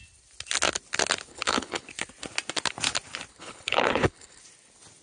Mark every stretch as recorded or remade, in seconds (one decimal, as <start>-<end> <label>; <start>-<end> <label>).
0.0-1.3 recorded; 1.3-1.9 remade; 1.9-3.3 recorded; 3.3-4.4 remade; 4.4-5.0 recorded